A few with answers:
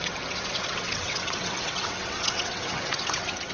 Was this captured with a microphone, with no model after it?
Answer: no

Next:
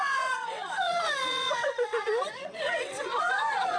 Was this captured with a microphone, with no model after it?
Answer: no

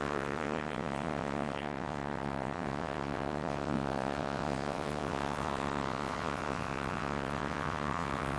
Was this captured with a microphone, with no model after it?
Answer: no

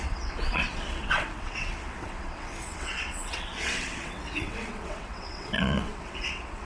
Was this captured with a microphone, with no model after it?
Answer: no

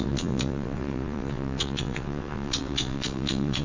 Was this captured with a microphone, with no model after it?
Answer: no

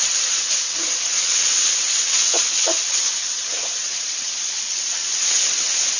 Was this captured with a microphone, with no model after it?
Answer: no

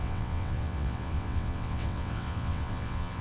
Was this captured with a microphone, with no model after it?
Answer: no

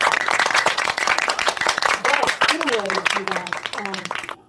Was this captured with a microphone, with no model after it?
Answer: no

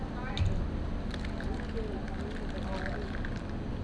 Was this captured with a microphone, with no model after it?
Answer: yes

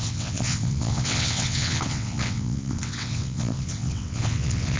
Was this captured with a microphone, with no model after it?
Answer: no